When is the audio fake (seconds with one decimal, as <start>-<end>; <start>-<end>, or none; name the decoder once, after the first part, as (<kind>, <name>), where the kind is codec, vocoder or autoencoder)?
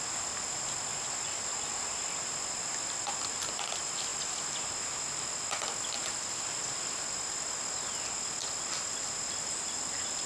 none